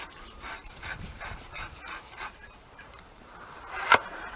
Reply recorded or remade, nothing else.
remade